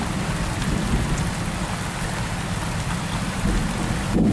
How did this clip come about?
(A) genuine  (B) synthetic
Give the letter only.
A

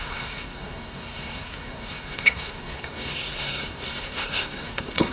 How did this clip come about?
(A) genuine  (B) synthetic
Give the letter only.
B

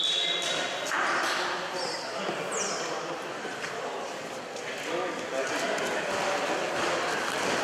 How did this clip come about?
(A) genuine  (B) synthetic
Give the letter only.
A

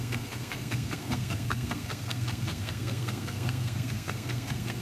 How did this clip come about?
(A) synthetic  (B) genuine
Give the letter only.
A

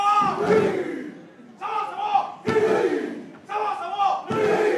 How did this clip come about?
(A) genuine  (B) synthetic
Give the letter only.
A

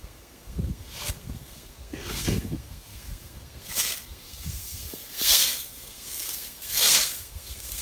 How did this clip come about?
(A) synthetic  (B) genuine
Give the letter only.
A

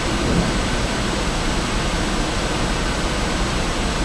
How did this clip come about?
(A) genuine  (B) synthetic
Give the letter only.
A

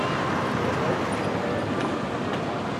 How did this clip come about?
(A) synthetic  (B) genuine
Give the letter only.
B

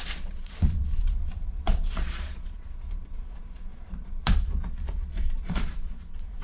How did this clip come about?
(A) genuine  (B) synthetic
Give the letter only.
B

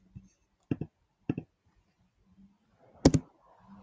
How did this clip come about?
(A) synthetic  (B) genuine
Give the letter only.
B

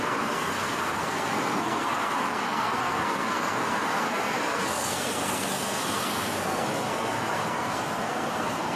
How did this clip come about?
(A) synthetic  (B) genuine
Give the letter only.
A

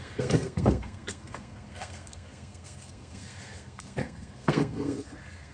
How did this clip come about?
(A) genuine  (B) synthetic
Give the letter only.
B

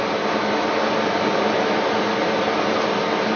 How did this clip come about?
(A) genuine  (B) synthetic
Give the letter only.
A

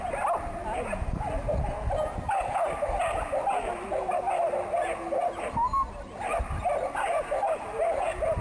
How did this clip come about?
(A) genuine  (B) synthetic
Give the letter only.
A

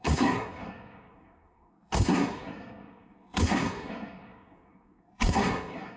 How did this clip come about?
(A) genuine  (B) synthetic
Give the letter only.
B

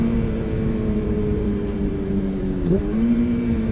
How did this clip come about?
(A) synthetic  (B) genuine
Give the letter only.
A